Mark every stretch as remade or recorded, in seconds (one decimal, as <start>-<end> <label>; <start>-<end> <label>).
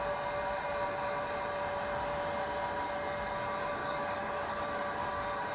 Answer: 0.0-3.8 recorded; 3.8-4.6 remade; 4.6-5.5 recorded